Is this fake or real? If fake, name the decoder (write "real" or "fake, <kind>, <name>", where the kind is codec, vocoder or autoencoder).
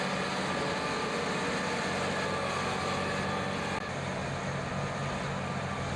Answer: real